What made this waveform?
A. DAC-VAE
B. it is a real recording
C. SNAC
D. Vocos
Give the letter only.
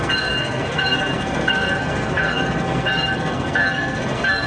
C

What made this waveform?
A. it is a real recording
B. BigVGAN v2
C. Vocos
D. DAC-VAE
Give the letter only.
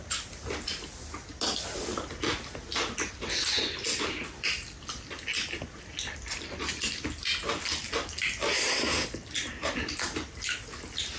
A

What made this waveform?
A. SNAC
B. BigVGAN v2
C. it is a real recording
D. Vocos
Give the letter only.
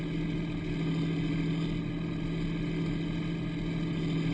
C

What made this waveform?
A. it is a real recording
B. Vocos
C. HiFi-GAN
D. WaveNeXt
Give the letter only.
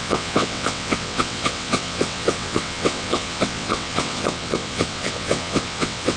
D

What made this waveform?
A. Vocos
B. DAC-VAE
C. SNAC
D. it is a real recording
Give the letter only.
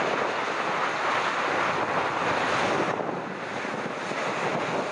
D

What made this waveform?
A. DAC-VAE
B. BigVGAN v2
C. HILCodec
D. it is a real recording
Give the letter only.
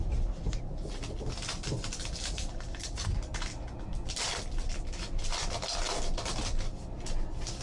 D